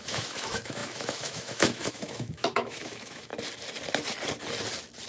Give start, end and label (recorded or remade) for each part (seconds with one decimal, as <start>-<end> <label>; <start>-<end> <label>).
0.0-3.3 remade; 3.3-5.1 recorded